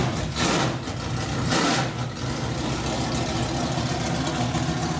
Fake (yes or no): no